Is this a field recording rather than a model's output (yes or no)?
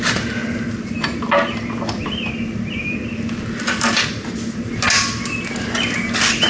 yes